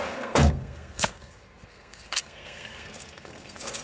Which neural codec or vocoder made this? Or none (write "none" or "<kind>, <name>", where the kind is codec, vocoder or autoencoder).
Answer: codec, SNAC